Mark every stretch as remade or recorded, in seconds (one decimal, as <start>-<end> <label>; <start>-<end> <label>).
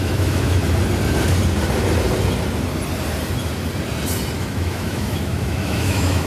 0.0-0.6 remade; 0.6-4.4 recorded; 4.4-6.3 remade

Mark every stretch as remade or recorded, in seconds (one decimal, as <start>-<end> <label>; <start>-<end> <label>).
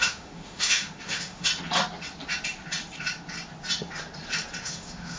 0.0-1.5 remade; 1.5-4.6 recorded; 4.6-5.2 remade